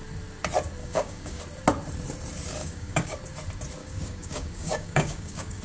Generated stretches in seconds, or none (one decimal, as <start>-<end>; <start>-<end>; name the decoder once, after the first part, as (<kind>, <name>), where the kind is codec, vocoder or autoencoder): 0.8-1.4 (codec, DAC); 2.6-3.2; 3.8-5.6